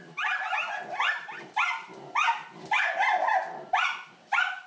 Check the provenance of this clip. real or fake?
real